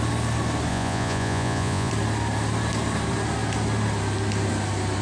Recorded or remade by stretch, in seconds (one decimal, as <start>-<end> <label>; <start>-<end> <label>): 0.0-0.7 recorded; 0.7-1.9 remade; 1.9-5.0 recorded